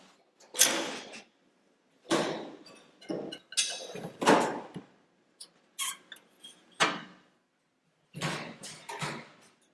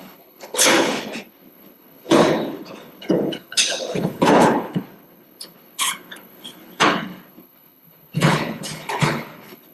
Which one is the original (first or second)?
first